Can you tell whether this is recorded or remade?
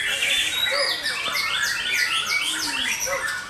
recorded